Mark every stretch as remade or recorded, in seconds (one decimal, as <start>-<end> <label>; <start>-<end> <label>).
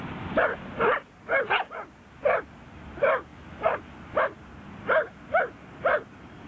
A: 0.0-6.5 recorded